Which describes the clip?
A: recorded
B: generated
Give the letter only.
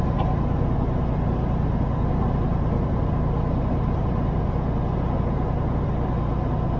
A